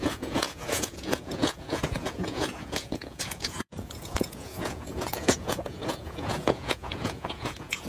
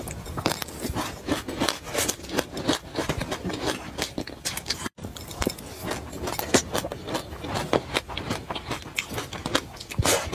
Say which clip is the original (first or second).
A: second